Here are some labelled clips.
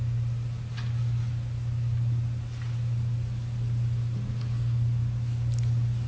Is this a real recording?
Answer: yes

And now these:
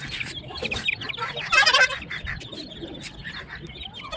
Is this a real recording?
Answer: yes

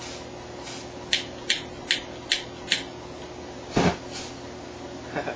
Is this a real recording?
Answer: yes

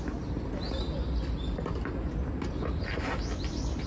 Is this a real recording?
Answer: yes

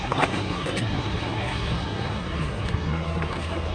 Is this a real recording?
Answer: no